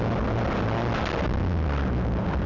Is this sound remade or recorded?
recorded